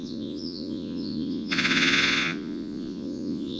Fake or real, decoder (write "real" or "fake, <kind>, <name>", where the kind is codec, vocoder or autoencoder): fake, vocoder, Vocos